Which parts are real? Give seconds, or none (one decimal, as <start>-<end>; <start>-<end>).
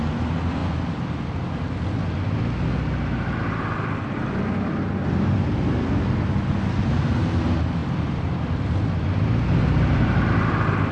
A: 0.0-7.8